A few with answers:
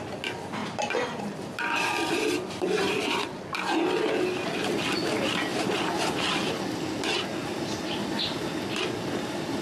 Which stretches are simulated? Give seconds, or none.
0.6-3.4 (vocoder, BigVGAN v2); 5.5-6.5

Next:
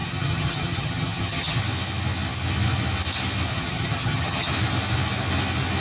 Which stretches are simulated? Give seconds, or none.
0.0-1.6 (vocoder, HiFi-GAN); 3.5-4.5

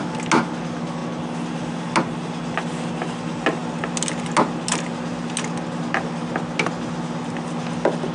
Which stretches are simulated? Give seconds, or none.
none

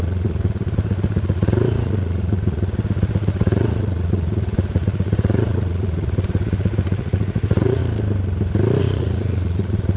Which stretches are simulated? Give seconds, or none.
0.0-7.8 (vocoder, Vocos); 8.8-10.0

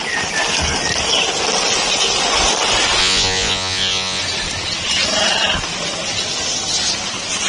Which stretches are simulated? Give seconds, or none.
3.0-4.2 (vocoder, Vocos)

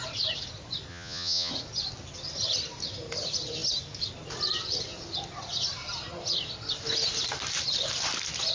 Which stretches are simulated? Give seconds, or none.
0.9-1.5 (vocoder, Vocos)